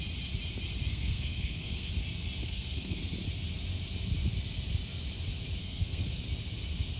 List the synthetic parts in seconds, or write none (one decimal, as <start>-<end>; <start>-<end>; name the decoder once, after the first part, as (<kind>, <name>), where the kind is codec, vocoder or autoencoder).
0.9-1.9 (codec, SNAC); 2.4-3.0; 5.6-6.2